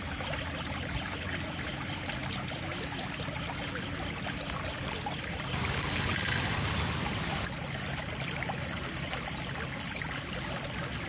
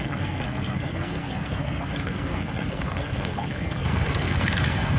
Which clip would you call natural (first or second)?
first